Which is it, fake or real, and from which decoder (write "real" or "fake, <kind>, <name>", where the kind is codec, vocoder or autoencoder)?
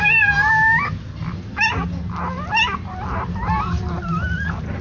real